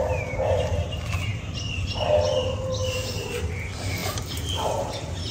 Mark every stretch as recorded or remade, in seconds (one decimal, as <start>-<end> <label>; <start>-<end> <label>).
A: 0.0-5.3 recorded